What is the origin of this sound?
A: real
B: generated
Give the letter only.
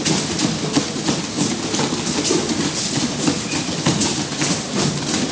A